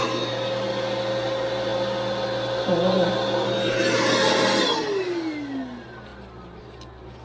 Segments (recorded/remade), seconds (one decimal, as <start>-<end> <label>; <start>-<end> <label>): 0.0-7.2 recorded